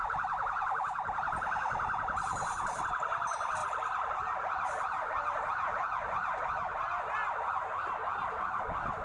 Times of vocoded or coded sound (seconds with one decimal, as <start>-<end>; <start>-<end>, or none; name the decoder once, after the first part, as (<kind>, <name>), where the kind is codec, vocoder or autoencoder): none